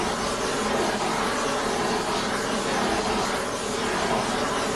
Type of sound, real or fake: real